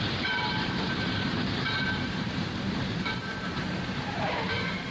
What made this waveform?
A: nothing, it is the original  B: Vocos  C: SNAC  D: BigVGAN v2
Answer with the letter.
D